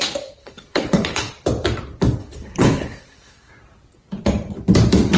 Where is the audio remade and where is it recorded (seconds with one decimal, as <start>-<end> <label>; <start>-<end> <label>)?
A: 0.0-0.4 recorded; 0.4-1.3 remade; 1.3-2.2 recorded; 2.2-3.5 remade; 3.5-5.2 recorded